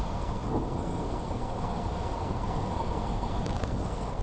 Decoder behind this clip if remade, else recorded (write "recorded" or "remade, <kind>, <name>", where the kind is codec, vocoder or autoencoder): remade, codec, SNAC